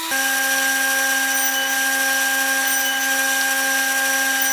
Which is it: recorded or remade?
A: recorded